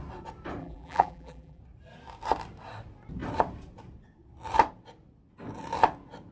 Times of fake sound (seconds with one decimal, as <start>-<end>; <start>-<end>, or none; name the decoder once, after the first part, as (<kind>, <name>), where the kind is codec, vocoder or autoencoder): 0.6-1.6 (vocoder, BigVGAN v2)